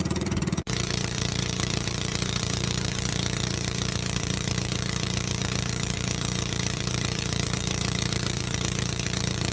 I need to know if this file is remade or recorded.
remade